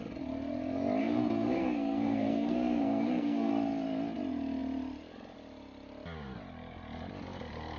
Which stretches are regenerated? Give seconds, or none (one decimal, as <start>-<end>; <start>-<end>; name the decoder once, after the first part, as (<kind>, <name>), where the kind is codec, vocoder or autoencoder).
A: 1.0-3.5 (codec, SNAC)